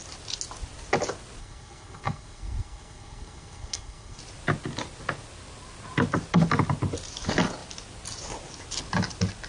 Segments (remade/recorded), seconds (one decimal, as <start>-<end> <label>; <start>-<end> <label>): 0.0-1.4 recorded; 1.4-4.2 remade; 4.2-9.5 recorded